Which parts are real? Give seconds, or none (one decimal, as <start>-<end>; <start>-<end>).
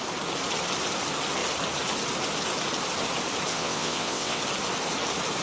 0.0-3.5; 4.4-5.4